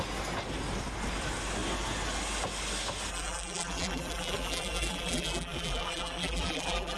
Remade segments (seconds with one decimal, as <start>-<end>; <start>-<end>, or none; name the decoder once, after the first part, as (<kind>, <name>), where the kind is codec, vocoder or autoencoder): 3.1-7.0 (vocoder, BigVGAN v2)